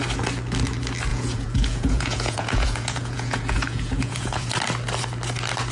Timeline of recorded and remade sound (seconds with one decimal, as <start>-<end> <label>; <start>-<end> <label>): 0.0-1.1 recorded; 1.1-4.5 remade; 4.5-5.7 recorded